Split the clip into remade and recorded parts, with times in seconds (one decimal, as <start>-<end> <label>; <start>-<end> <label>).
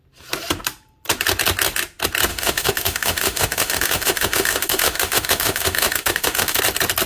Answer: 0.0-2.3 recorded; 2.3-6.6 remade; 6.6-7.1 recorded